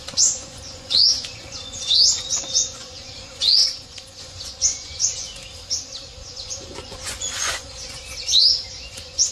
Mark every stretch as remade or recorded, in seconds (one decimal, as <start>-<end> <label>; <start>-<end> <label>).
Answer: 0.0-5.4 remade; 5.4-6.2 recorded; 6.2-9.3 remade

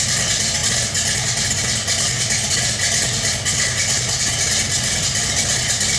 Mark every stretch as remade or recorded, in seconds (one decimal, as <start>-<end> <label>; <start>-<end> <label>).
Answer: 0.0-6.0 recorded

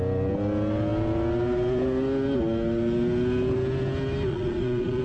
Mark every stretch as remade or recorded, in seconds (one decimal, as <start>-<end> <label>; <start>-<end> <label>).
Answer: 0.0-4.3 recorded; 4.3-5.0 remade

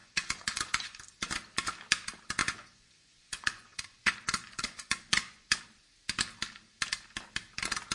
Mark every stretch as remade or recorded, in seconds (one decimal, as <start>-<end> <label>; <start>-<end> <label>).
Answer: 0.0-1.0 remade; 1.0-2.4 recorded; 2.4-5.6 remade; 5.6-7.9 recorded

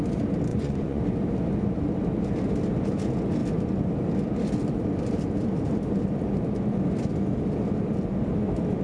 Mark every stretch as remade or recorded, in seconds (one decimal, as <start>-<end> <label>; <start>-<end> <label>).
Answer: 0.0-0.5 recorded; 0.5-1.0 remade; 1.0-8.8 recorded

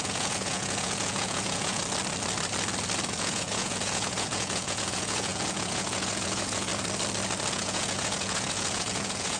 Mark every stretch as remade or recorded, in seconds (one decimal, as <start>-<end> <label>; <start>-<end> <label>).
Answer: 0.0-1.8 remade; 1.8-3.1 recorded; 3.1-6.7 remade; 6.7-7.5 recorded; 7.5-9.4 remade

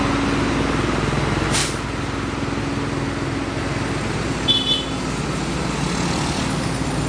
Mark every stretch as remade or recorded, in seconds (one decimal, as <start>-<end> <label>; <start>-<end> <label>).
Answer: 0.0-7.1 recorded